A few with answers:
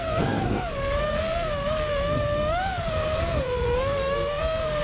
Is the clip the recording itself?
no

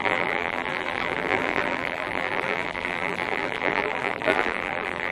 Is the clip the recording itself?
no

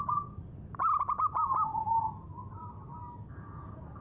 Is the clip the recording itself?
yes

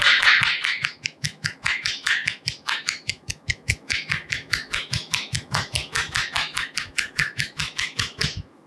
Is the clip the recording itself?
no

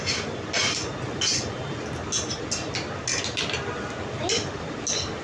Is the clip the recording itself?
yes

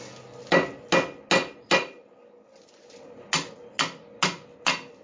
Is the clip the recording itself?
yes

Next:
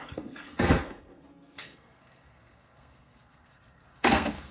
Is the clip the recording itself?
no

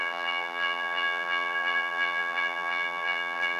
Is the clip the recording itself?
no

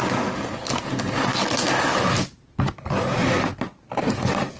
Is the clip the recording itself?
yes